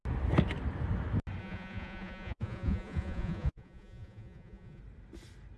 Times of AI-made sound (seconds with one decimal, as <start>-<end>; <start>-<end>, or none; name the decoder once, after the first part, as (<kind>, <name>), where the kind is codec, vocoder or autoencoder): 1.4-4.8 (vocoder, Vocos)